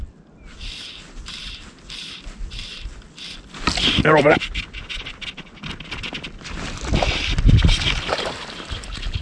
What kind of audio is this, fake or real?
real